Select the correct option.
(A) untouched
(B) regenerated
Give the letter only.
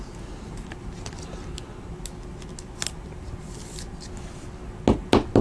A